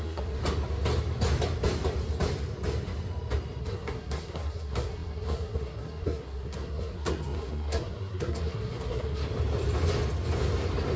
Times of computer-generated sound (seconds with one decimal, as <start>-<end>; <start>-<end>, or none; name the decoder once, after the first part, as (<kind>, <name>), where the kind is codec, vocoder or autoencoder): 0.0-0.4 (codec, SNAC); 3.6-9.2